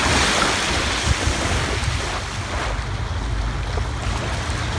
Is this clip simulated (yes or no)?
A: no